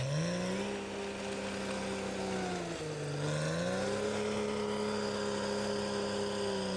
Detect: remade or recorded recorded